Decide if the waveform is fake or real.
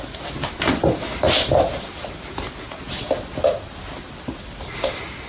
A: real